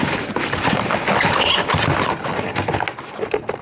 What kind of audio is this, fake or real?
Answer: real